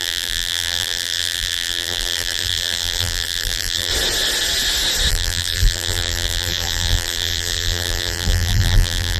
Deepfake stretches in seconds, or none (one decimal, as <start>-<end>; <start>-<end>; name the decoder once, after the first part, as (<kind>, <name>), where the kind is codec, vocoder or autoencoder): 0.0-3.9 (vocoder, BigVGAN v2); 5.1-9.2